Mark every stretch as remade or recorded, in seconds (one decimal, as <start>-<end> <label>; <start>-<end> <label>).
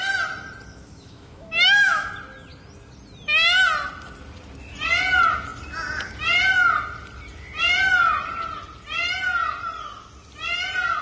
0.0-0.7 recorded; 0.7-2.1 remade; 2.1-11.0 recorded